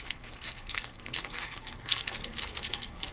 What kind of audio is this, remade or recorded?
remade